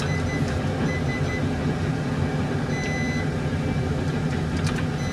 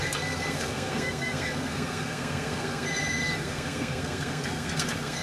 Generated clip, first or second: second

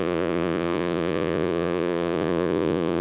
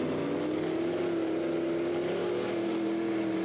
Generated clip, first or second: first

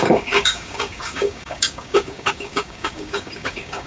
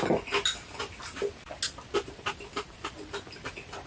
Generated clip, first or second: first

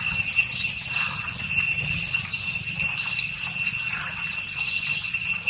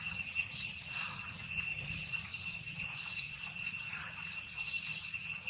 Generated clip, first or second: second